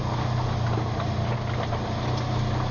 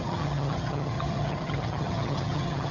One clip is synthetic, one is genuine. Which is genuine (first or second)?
first